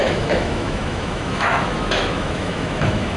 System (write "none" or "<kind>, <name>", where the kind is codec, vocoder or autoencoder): autoencoder, DAC-VAE